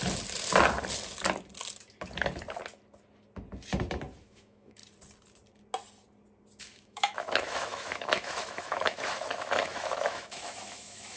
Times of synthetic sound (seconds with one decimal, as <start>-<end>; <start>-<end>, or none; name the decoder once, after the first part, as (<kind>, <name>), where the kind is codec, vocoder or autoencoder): 4.2-4.8 (autoencoder, DAC-VAE); 6.6-11.2